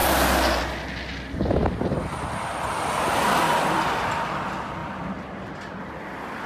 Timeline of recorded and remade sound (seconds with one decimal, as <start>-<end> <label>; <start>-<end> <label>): 0.0-1.1 recorded; 1.1-2.0 remade; 2.0-4.8 recorded; 4.8-5.8 remade; 5.8-6.5 recorded

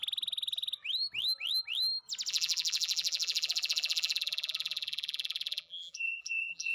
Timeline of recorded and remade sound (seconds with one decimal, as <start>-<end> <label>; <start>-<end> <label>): 0.0-2.3 recorded; 2.3-6.7 remade

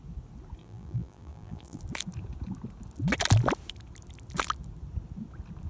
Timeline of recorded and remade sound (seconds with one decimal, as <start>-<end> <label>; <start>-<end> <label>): 0.0-0.6 recorded; 0.6-1.8 remade; 1.8-5.7 recorded

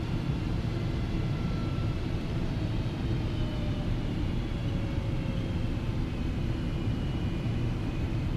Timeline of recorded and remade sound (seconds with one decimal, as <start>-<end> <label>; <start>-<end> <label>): 0.0-4.6 remade; 4.6-6.8 recorded; 6.8-8.4 remade

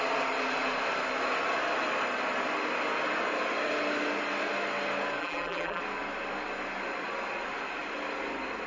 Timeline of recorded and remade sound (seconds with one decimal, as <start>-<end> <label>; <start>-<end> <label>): 0.0-5.2 recorded; 5.2-5.8 remade; 5.8-8.7 recorded

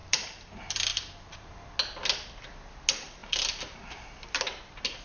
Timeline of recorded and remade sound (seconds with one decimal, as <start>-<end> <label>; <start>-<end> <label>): 0.0-0.5 remade; 0.5-0.9 recorded; 0.9-1.5 remade; 1.5-5.0 recorded

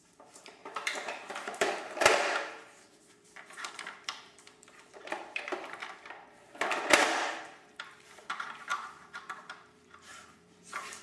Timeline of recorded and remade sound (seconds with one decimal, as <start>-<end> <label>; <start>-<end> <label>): 0.0-5.5 remade; 5.5-6.7 recorded; 6.7-11.0 remade

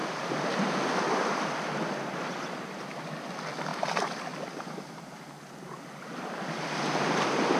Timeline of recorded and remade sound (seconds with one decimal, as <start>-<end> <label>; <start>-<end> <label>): 0.0-2.0 remade; 2.0-7.6 recorded